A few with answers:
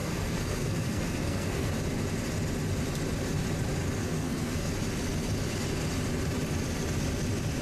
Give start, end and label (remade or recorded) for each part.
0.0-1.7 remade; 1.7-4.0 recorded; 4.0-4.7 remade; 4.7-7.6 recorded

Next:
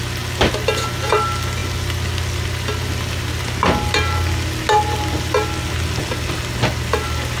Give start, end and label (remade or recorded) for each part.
0.0-7.4 recorded

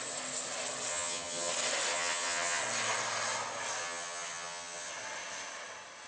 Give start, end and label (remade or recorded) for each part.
0.0-0.9 recorded; 0.9-1.5 remade; 1.5-1.9 recorded; 1.9-2.6 remade; 2.6-3.8 recorded; 3.8-4.9 remade; 4.9-6.1 recorded

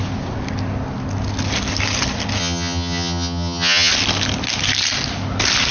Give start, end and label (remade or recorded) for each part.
0.0-2.4 recorded; 2.4-3.9 remade; 3.9-5.7 recorded